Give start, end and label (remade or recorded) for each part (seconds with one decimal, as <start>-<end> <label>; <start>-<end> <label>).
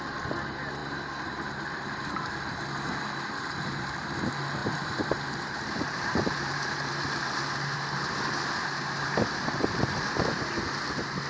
0.0-0.8 recorded; 0.8-2.6 remade; 2.6-4.6 recorded; 4.6-6.9 remade; 6.9-11.3 recorded